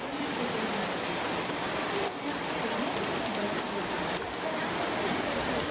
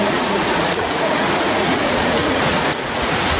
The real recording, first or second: first